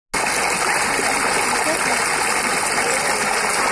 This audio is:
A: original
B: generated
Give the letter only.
A